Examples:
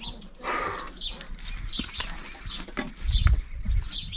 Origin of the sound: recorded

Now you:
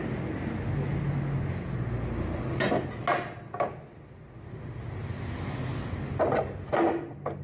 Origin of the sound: recorded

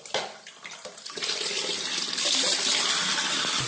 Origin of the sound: remade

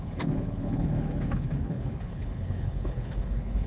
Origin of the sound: remade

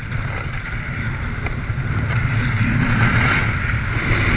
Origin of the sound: recorded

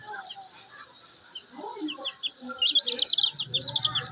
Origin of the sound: recorded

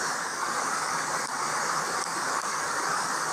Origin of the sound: remade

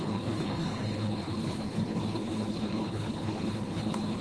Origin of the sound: remade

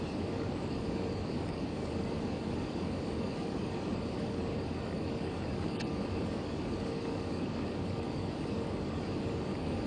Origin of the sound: remade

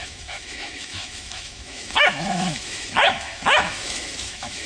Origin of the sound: remade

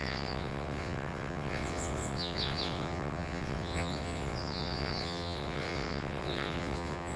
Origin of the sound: remade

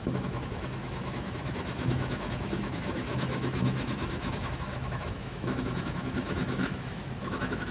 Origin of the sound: remade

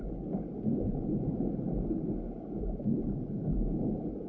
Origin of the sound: recorded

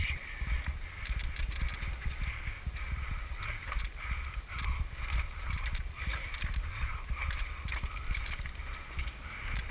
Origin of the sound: recorded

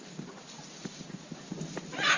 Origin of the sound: recorded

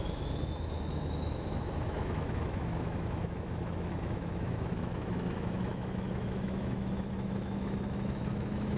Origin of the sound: remade